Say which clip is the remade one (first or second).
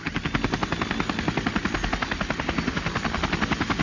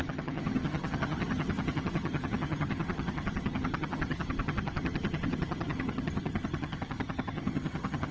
second